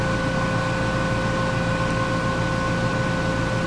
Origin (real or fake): real